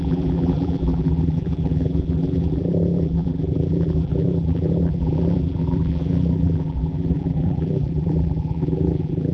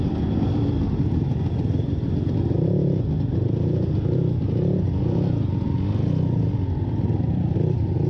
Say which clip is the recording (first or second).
second